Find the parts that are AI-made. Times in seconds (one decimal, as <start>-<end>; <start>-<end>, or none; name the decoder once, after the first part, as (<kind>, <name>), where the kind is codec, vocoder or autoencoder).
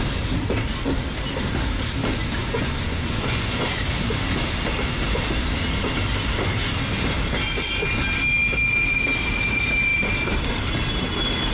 2.4-3.8 (vocoder, Vocos)